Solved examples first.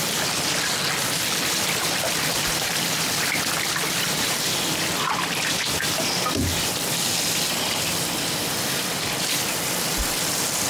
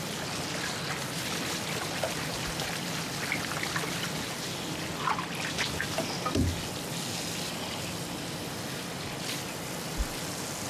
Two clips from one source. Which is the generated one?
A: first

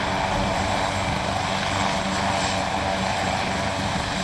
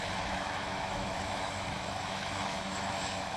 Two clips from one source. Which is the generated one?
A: second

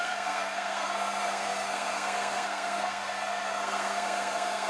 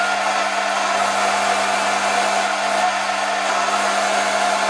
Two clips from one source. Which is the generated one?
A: first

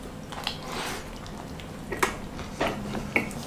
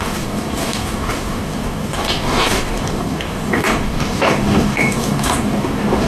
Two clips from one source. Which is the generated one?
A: second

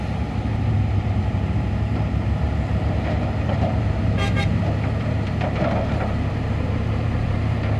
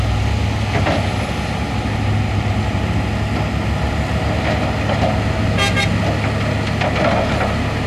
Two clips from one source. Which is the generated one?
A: first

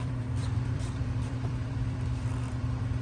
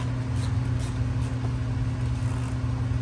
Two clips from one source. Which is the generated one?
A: first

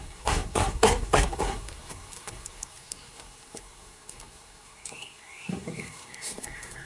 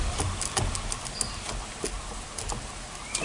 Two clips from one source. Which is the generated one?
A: first